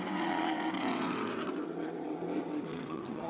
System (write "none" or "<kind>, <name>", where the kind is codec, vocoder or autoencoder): vocoder, WaveNeXt